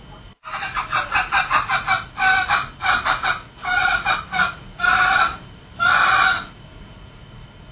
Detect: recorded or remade recorded